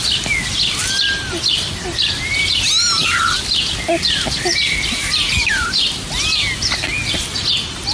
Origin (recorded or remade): recorded